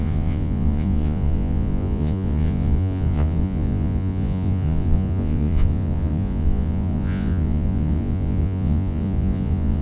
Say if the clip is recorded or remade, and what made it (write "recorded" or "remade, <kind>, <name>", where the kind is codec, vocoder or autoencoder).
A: remade, vocoder, Vocos